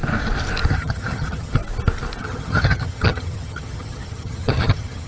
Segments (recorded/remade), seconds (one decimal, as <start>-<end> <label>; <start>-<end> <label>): 0.0-0.7 recorded; 0.7-1.6 remade; 1.6-2.2 recorded; 2.2-5.1 remade